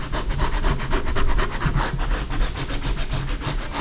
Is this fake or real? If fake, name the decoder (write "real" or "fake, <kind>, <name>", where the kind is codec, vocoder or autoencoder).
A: real